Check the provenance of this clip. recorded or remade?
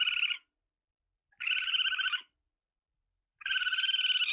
remade